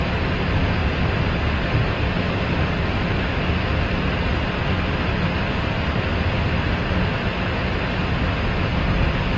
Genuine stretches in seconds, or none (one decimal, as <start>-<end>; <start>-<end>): 0.0-0.8; 2.1-9.4